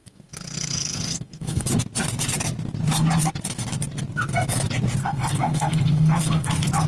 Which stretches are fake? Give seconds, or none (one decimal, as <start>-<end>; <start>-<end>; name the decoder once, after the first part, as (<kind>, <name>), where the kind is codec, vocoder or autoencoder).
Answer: 0.0-1.7 (codec, SNAC); 5.0-6.5